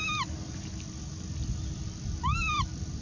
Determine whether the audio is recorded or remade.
recorded